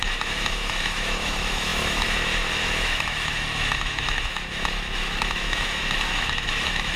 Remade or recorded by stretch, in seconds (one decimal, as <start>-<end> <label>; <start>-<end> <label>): 0.0-7.0 remade